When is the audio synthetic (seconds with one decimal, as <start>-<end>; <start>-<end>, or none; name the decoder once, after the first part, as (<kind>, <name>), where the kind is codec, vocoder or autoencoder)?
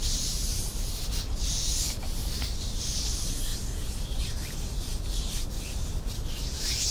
0.0-0.7 (vocoder, BigVGAN v2); 2.2-2.8